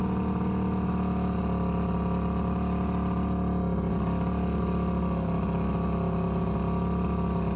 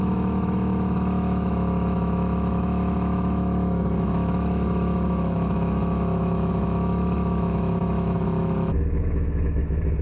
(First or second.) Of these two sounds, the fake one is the second